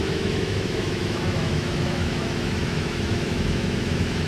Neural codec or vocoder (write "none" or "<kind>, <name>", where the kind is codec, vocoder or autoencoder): autoencoder, DAC-VAE